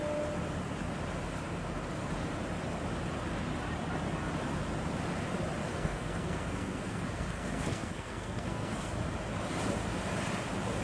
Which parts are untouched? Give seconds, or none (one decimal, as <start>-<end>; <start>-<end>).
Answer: 0.0-5.6; 8.9-10.8